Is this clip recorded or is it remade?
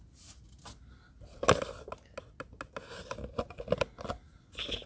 recorded